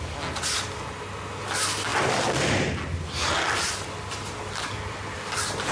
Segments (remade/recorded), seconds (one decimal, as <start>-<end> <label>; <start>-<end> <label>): 0.0-5.7 recorded